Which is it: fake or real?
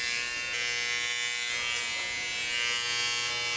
real